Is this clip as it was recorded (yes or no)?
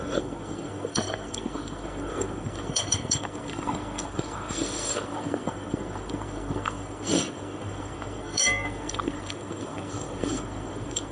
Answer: no